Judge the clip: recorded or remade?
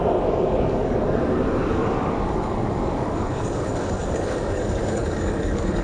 remade